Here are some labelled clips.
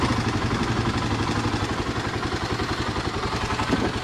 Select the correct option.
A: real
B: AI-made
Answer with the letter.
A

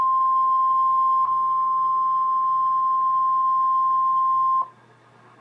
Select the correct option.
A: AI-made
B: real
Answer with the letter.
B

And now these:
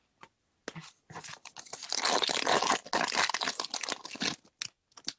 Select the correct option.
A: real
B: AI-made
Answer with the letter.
A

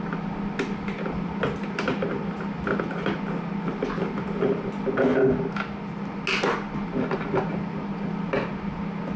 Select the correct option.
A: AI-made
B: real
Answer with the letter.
B